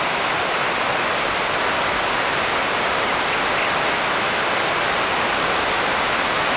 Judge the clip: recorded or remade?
recorded